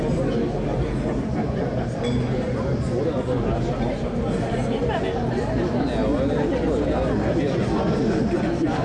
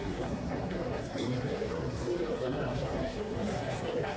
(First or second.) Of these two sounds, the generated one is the second